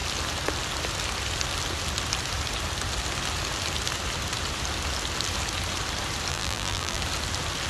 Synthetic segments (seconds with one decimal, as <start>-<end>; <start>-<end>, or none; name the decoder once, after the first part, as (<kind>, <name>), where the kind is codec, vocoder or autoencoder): 6.3-7.0 (vocoder, BigVGAN v2)